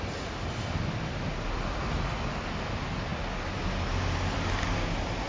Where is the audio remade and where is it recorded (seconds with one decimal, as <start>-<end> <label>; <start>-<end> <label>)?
0.0-5.3 recorded